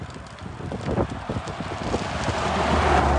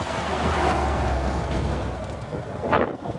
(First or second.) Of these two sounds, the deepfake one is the second